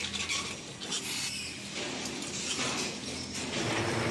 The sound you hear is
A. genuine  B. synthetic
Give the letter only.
A